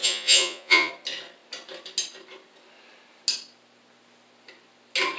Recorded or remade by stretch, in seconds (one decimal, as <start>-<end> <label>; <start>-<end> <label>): 0.0-0.9 remade; 0.9-5.2 recorded